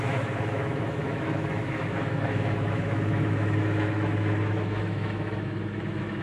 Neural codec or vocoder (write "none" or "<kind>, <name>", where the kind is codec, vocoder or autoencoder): autoencoder, DAC-VAE